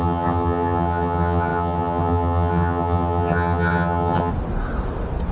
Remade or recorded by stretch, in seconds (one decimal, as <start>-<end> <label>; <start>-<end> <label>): 0.0-4.3 remade; 4.3-5.3 recorded